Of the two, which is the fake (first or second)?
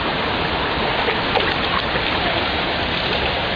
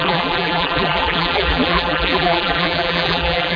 second